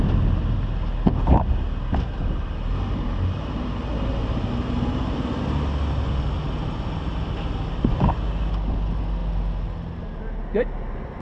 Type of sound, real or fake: real